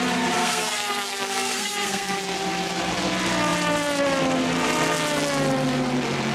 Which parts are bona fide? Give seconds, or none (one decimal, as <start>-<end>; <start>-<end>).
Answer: 0.0-0.4; 2.2-6.3